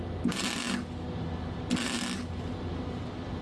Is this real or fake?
real